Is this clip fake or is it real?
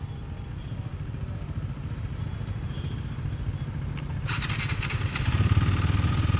real